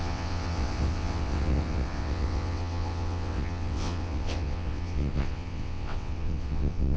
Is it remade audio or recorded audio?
remade